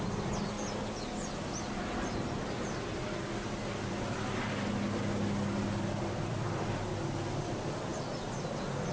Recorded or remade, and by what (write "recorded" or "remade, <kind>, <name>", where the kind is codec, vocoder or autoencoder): recorded